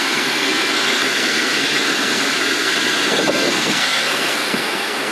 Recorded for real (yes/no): no